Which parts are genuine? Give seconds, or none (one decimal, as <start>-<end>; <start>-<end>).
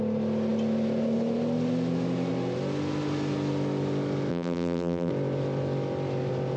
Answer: 0.0-4.3; 5.1-6.6